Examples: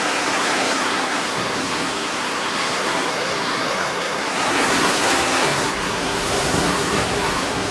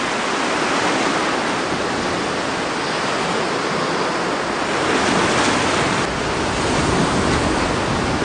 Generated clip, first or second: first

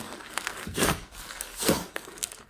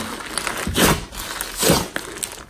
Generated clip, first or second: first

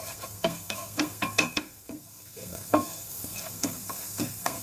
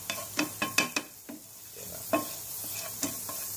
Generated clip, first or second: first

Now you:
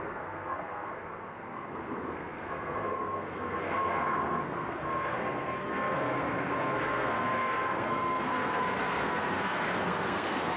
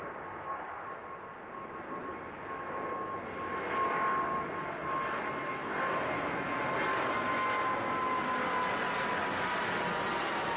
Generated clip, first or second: first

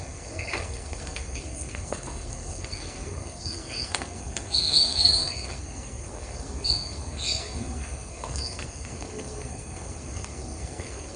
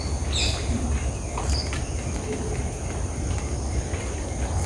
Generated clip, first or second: first